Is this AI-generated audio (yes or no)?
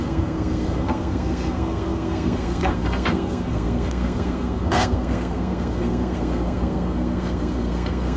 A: yes